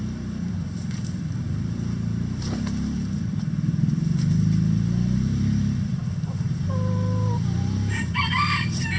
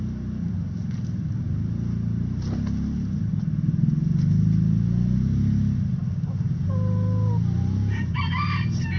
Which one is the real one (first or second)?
second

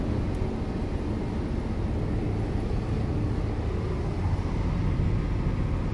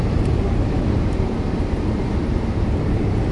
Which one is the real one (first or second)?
first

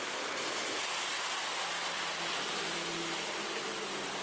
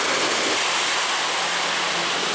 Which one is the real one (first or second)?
first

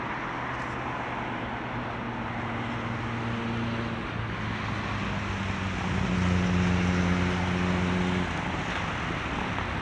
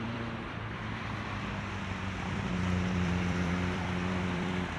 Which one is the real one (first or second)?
first